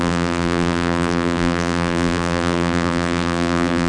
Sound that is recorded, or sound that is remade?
remade